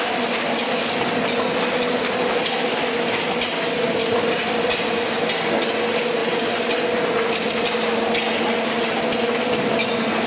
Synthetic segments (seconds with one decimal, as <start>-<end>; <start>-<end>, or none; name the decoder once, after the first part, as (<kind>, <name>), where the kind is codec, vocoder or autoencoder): none